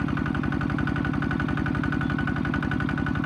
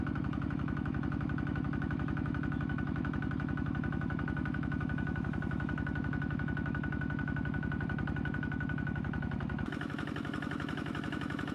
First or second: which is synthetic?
second